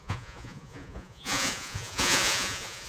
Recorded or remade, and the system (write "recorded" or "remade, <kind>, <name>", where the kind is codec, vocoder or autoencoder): remade, vocoder, Vocos